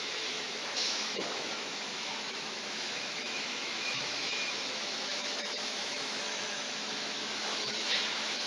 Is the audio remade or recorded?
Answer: remade